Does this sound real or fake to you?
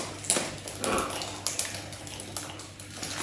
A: real